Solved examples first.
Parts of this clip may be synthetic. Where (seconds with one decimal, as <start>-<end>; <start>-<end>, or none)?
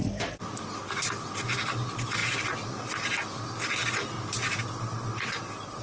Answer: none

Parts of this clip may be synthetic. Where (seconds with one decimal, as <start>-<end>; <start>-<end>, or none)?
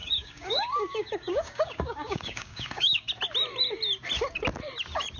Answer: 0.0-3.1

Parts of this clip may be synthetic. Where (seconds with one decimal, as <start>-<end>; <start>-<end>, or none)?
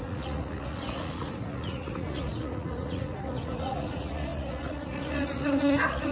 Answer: 0.0-6.1